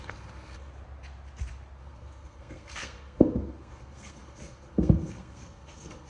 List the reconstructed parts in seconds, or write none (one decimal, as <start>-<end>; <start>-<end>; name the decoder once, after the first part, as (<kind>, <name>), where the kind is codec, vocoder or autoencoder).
0.0-0.7 (codec, SNAC); 1.8-6.1